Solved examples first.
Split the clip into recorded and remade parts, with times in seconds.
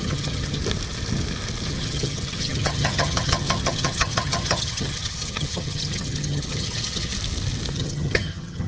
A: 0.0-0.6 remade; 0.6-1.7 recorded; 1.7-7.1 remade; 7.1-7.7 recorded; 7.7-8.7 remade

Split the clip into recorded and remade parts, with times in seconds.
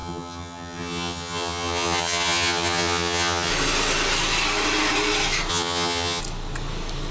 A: 0.0-3.5 remade; 3.5-5.5 recorded; 5.5-6.2 remade; 6.2-7.1 recorded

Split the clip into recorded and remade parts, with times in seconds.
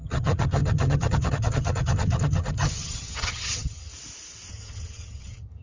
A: 0.0-3.9 remade; 3.9-4.5 recorded; 4.5-5.6 remade